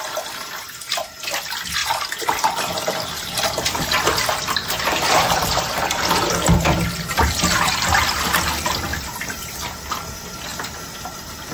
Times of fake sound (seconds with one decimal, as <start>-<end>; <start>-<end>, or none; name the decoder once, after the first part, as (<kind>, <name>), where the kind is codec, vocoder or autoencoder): 1.8-6.3 (vocoder, BigVGAN v2); 8.9-9.8